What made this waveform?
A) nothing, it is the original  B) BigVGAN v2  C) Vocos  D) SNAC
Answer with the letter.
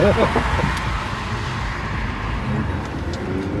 A